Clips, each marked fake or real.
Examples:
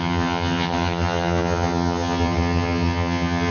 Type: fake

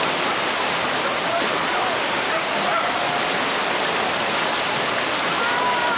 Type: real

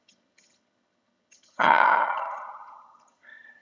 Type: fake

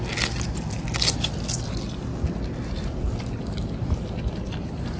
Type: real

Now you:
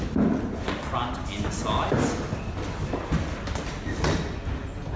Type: real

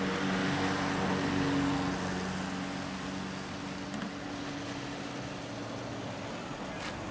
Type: real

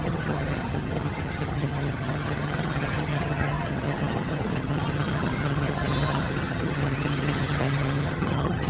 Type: fake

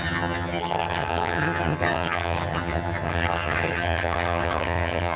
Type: fake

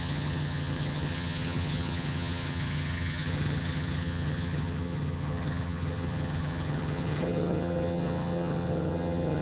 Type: fake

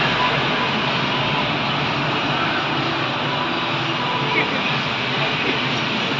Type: real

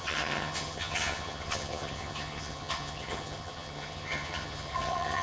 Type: fake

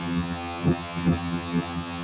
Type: fake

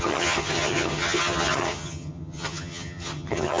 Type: fake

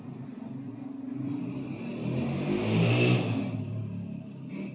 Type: real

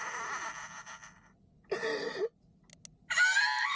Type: real